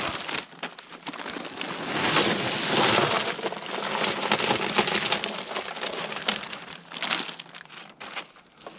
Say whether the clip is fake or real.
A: real